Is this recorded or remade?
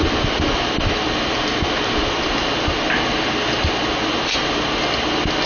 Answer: remade